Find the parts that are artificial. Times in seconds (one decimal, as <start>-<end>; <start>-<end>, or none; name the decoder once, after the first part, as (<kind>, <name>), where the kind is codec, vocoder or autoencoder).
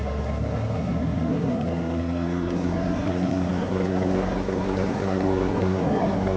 0.0-6.4 (codec, SNAC)